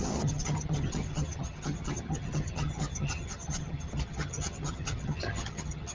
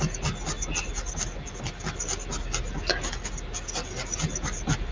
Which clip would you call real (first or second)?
second